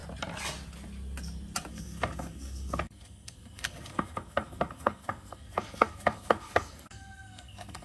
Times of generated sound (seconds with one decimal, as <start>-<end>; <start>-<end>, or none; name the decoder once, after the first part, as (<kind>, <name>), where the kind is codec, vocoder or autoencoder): 1.7-7.8 (codec, SNAC)